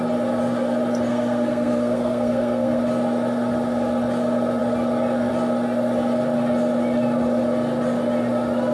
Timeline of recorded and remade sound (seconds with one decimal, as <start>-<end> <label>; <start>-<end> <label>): 0.0-1.1 recorded; 1.1-2.8 remade; 2.8-8.7 recorded